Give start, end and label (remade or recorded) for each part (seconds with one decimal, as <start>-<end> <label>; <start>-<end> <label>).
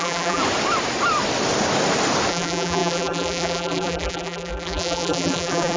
0.0-0.4 remade; 0.4-2.3 recorded; 2.3-5.8 remade